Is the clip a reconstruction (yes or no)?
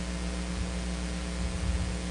no